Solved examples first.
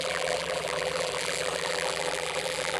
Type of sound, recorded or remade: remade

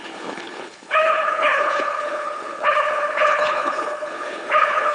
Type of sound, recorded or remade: remade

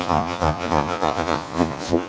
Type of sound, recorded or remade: remade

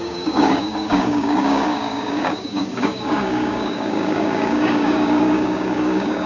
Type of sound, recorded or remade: remade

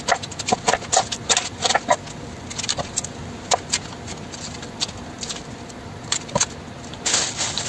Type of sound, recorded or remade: recorded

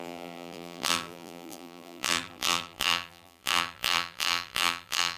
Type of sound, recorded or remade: remade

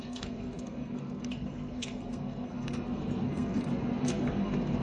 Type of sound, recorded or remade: remade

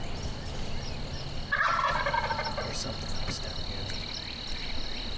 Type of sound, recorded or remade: recorded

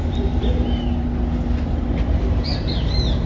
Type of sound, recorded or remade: recorded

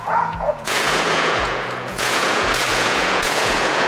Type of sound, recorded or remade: remade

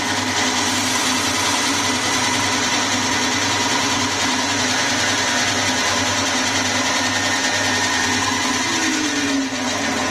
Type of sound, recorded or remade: recorded